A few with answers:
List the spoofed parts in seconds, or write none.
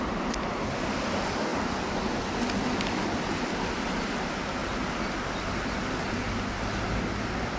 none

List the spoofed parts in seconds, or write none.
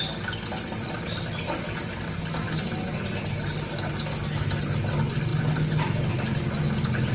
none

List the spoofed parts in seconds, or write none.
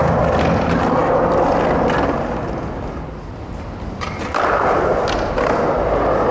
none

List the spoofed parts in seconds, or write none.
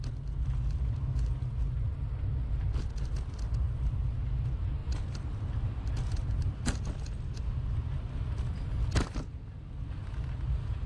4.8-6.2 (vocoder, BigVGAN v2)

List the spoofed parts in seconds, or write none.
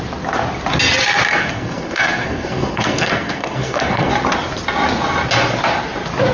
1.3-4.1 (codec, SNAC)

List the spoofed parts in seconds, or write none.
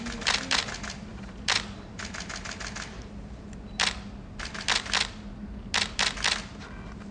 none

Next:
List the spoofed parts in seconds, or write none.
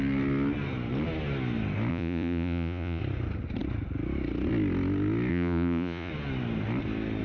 1.9-3.0 (vocoder, Vocos); 5.3-6.1